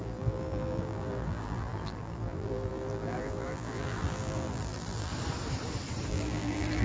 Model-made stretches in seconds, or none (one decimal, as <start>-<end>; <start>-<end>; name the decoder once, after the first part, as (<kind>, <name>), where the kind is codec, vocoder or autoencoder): 0.0-5.1 (vocoder, BigVGAN v2); 6.1-6.8